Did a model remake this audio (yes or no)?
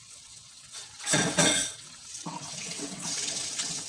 yes